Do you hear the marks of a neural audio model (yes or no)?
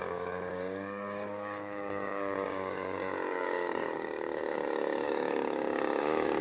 yes